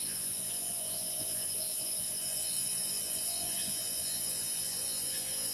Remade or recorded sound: remade